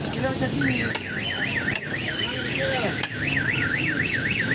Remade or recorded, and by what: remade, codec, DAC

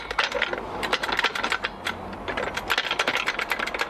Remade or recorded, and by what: recorded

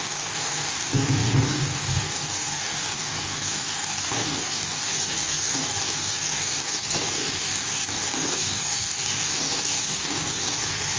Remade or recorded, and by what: remade, codec, DAC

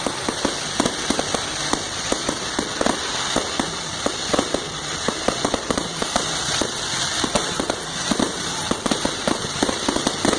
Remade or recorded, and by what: recorded